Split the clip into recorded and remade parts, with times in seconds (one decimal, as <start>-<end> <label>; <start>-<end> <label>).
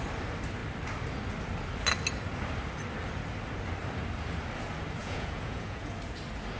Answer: 0.0-5.0 recorded; 5.0-5.9 remade; 5.9-6.6 recorded